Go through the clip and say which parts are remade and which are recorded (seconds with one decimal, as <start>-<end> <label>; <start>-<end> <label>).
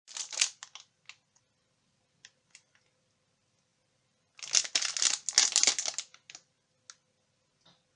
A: 0.0-8.0 recorded